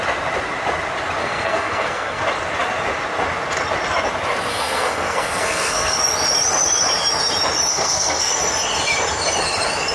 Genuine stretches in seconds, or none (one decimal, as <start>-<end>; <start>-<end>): 0.0-1.2; 2.2-4.5; 6.0-7.7; 8.3-9.9